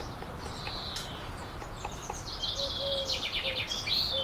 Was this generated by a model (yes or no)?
no